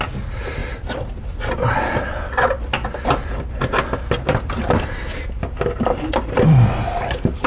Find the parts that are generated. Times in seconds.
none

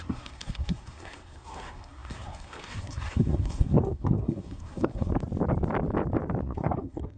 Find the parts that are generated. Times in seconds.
0.0-5.1 (codec, SNAC); 6.4-7.2

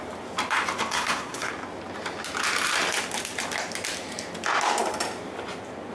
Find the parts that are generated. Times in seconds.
0.9-1.5 (codec, SNAC)

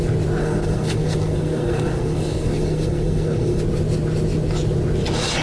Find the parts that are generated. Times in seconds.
0.4-3.6 (codec, SNAC)

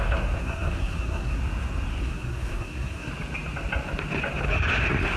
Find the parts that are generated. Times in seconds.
0.4-1.4 (codec, SNAC); 2.0-3.1

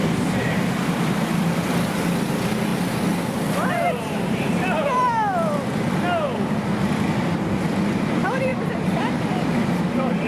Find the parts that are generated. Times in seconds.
none

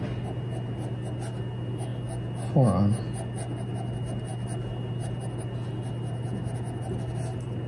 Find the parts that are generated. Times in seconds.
none

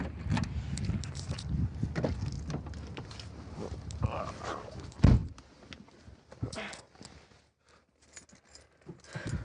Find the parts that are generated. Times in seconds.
none